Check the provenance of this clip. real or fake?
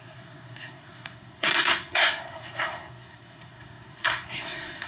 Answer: fake